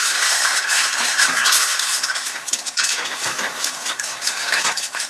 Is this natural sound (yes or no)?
no